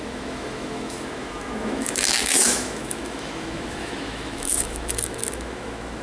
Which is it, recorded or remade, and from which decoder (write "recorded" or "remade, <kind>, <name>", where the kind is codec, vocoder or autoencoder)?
remade, autoencoder, DAC-VAE